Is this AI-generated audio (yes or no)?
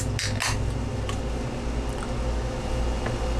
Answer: no